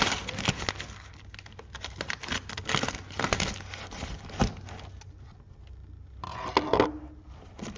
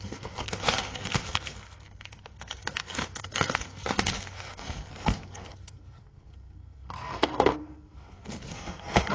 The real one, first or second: first